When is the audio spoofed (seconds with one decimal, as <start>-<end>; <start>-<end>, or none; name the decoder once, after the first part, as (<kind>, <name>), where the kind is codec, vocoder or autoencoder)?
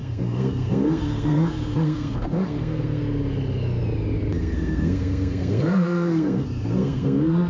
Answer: 0.0-3.0 (codec, SNAC); 4.4-7.5